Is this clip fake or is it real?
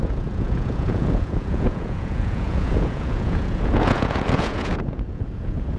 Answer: fake